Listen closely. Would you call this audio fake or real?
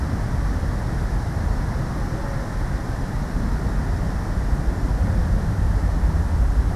real